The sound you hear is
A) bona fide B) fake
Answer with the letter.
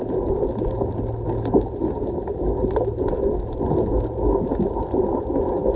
A